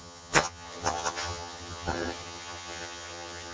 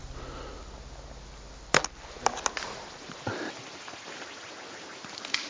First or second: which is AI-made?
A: first